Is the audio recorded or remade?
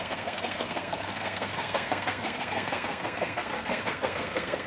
remade